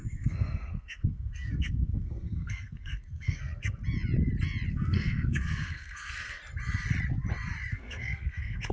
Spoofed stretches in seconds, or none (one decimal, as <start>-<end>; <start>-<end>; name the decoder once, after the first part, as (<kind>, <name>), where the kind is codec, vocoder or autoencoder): 0.0-3.8 (codec, SNAC); 4.7-6.4; 7.7-8.7